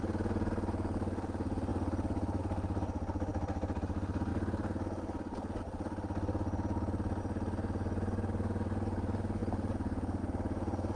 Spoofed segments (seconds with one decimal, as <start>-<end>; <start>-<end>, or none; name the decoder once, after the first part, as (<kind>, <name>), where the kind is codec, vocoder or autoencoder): none